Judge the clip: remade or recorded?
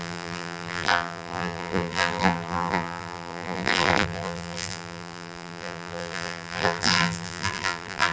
remade